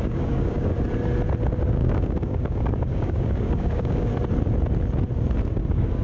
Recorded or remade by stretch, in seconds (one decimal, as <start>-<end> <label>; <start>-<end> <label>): 0.0-0.7 remade; 0.7-1.7 recorded; 1.7-4.1 remade; 4.1-5.6 recorded; 5.6-6.0 remade